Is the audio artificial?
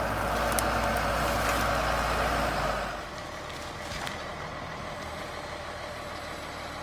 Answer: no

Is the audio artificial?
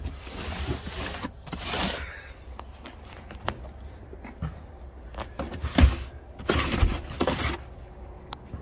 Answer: no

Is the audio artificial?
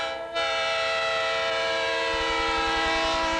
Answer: no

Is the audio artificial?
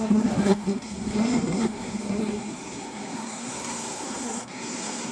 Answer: yes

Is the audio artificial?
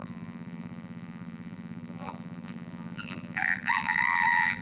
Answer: yes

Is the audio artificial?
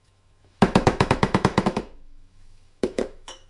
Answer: yes